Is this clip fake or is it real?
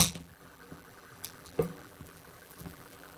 fake